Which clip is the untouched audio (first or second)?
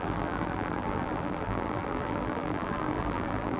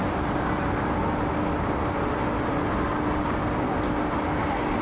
second